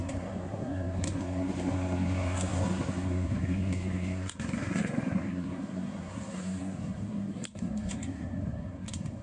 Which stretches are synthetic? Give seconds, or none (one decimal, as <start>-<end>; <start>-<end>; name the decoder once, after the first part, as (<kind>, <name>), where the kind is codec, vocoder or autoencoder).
0.0-9.2 (codec, SNAC)